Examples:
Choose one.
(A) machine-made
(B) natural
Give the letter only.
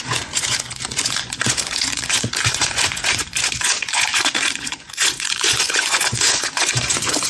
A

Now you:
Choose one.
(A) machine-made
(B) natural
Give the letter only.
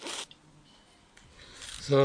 B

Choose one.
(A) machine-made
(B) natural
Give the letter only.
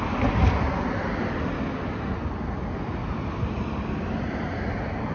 B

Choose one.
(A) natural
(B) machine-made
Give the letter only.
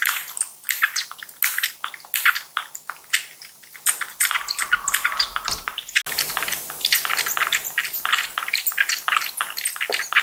A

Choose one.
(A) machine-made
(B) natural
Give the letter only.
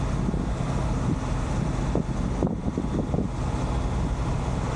B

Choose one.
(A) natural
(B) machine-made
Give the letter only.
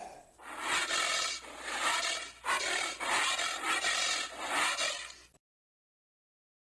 A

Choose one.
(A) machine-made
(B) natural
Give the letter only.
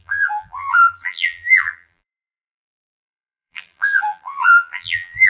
A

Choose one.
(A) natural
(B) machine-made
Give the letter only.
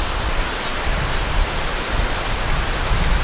A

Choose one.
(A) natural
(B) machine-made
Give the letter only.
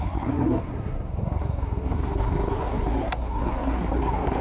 B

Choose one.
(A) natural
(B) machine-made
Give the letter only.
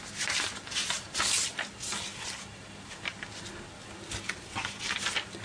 A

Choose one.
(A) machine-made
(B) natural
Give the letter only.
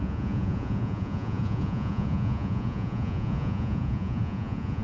A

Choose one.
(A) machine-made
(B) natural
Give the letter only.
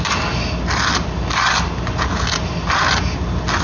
B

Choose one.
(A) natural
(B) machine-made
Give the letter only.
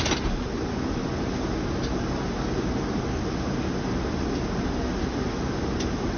A